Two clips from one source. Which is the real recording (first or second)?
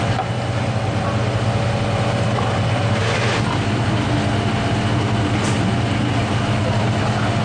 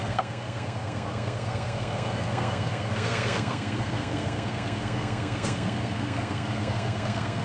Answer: first